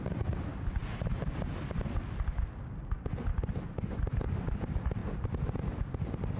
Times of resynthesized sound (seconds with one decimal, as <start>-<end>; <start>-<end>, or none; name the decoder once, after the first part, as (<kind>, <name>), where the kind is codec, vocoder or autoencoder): none